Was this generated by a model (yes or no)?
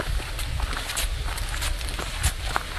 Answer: no